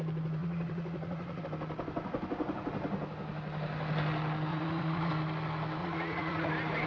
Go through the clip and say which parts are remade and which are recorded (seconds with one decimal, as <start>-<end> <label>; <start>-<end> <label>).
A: 0.0-0.4 recorded; 0.4-1.4 remade; 1.4-4.5 recorded; 4.5-5.1 remade; 5.1-5.8 recorded; 5.8-6.5 remade; 6.5-6.9 recorded